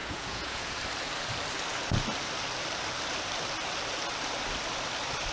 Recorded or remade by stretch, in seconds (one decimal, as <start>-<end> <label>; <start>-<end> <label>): 0.0-0.8 remade; 0.8-5.3 recorded